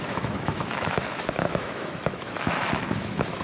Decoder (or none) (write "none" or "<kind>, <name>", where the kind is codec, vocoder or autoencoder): autoencoder, DAC-VAE